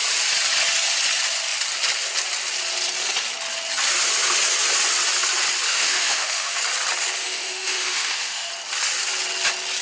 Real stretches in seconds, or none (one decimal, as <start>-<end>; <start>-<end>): 0.0-5.7; 6.6-7.2; 8.5-9.8

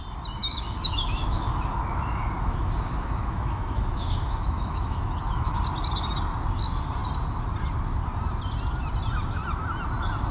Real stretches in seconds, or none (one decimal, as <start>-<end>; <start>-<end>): 0.0-0.4; 5.6-10.3